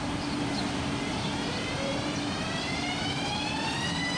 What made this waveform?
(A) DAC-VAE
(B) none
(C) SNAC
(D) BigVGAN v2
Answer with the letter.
D